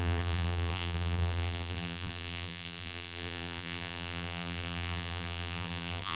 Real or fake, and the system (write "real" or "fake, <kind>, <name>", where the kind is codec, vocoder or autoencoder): fake, vocoder, BigVGAN v2